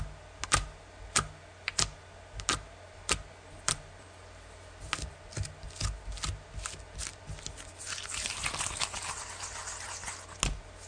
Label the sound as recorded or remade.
recorded